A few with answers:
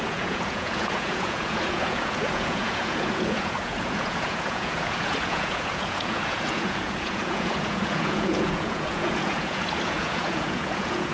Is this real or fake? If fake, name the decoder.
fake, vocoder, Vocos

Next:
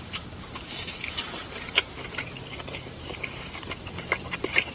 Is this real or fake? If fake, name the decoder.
fake, vocoder, BigVGAN v2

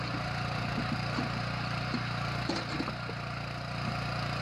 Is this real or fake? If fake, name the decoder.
real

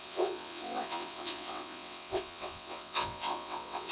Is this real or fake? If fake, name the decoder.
fake, vocoder, WaveNeXt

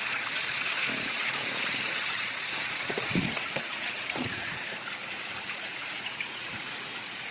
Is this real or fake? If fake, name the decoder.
fake, vocoder, Vocos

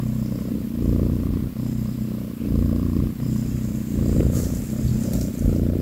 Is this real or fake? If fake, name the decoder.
real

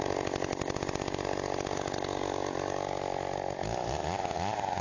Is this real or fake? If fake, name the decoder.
real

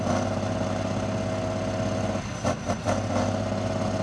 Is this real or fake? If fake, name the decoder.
real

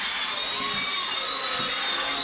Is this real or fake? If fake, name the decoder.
real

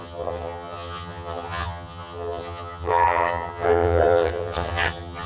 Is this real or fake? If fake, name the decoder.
fake, vocoder, HiFi-GAN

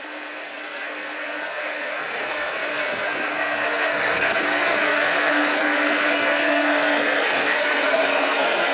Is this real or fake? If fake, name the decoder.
fake, codec, SNAC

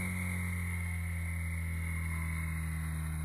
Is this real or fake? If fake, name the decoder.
real